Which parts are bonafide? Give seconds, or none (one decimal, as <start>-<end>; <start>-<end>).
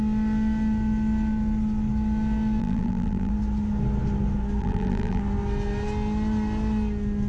0.0-2.6; 3.3-4.6; 5.2-7.3